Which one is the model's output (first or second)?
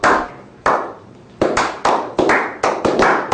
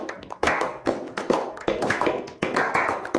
second